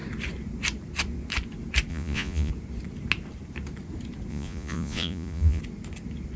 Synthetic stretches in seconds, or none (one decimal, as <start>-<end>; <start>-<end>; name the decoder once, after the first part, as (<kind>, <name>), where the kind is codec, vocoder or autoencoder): 1.9-2.5 (vocoder, Vocos); 4.3-5.6